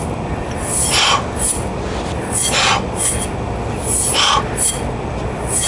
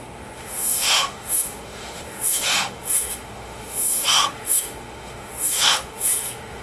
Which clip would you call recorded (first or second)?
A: first